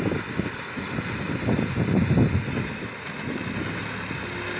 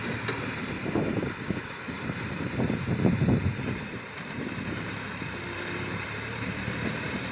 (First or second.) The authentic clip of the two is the first